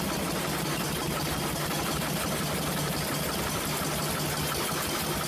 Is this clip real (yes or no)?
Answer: yes